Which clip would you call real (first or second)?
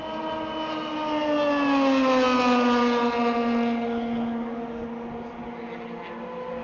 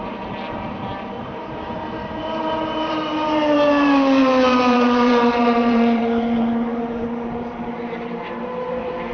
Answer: first